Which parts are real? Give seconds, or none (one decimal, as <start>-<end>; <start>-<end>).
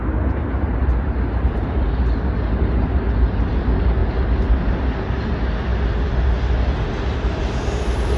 0.0-0.8; 2.3-8.2